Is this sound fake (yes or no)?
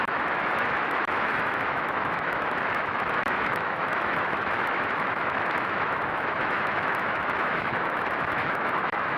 yes